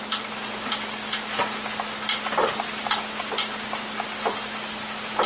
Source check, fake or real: real